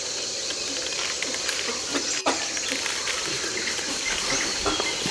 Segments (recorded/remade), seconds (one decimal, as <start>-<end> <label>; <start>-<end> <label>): 0.0-0.8 remade; 0.8-3.9 recorded; 3.9-5.1 remade